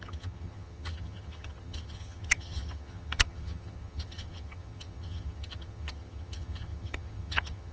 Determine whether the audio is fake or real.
fake